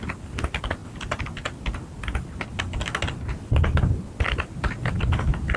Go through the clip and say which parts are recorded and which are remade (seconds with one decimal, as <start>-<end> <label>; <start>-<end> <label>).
0.0-5.6 recorded